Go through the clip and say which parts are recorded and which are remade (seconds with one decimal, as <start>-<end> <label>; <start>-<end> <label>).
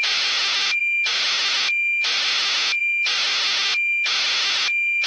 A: 0.0-5.1 recorded